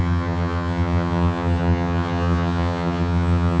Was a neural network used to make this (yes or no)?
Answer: yes